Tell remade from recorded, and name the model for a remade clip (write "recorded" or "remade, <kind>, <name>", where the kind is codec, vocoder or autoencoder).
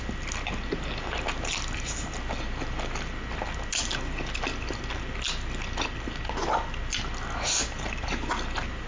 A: recorded